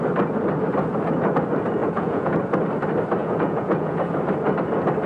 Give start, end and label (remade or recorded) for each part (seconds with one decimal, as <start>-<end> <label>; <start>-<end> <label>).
0.0-1.8 recorded; 1.8-2.4 remade; 2.4-3.2 recorded; 3.2-4.0 remade; 4.0-5.1 recorded